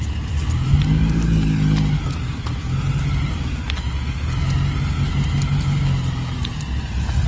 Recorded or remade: recorded